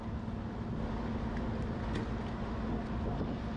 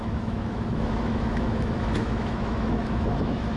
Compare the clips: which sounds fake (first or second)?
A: second